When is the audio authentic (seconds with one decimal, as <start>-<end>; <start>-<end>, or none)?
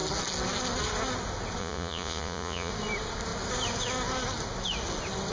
0.0-1.6; 2.7-5.3